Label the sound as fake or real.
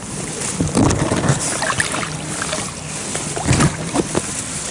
fake